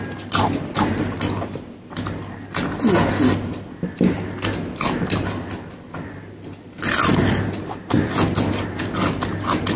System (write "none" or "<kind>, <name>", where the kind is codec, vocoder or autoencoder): none